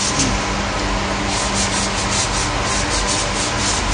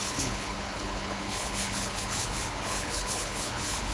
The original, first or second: first